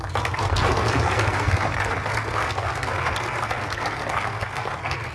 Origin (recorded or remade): remade